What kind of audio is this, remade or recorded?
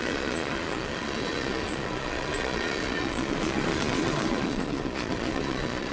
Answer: remade